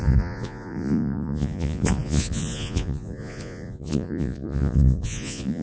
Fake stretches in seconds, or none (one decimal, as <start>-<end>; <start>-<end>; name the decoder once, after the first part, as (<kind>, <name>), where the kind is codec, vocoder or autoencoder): 0.0-5.6 (vocoder, Vocos)